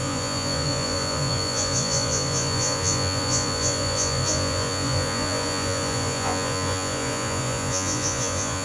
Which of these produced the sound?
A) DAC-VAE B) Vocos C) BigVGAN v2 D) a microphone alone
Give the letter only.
B